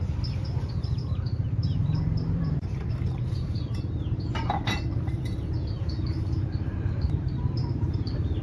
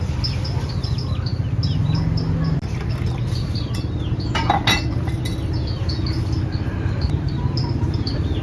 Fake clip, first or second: first